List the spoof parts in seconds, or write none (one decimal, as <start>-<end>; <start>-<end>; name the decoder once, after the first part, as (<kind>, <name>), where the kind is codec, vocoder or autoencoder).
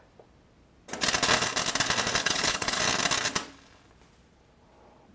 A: 2.2-2.8 (codec, HILCodec)